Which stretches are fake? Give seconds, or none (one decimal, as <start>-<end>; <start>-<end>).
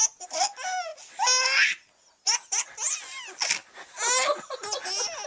none